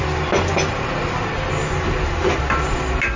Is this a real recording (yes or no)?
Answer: yes